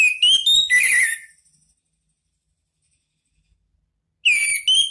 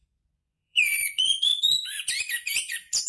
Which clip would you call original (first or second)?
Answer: first